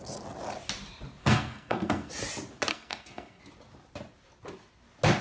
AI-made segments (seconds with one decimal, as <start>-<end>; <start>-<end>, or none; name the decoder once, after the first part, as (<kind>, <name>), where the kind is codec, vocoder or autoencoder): 1.2-2.1 (codec, SNAC); 2.7-3.4